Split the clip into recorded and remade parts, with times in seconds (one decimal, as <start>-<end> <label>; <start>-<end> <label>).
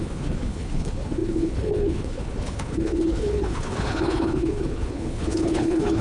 0.0-6.0 remade